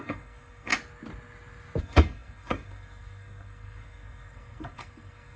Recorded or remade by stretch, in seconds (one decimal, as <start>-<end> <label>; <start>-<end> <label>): 0.0-0.7 remade; 0.7-1.8 recorded; 1.8-5.4 remade